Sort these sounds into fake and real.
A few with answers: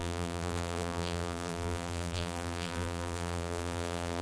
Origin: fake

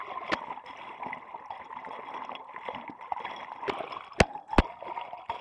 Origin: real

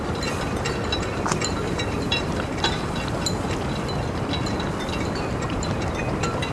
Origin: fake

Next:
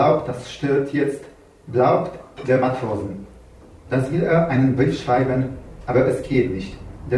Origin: fake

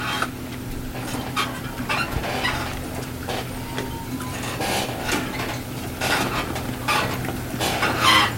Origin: real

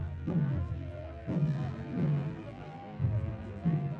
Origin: fake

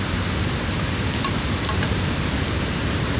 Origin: fake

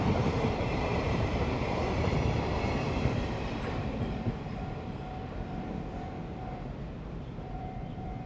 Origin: fake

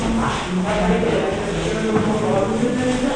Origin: real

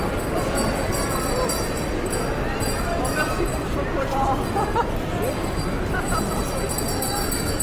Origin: fake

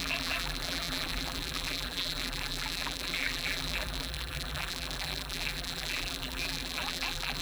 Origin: fake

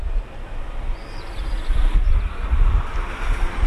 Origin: fake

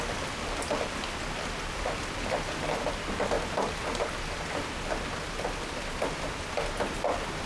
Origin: real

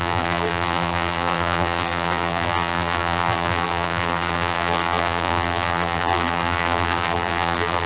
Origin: fake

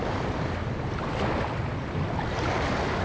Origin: fake